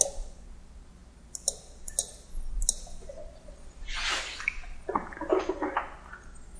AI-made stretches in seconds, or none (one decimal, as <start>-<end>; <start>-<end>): none